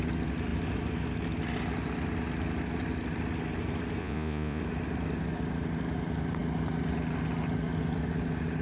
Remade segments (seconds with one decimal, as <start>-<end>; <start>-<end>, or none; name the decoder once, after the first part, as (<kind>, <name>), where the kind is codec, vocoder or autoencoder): 4.0-4.6 (vocoder, Vocos)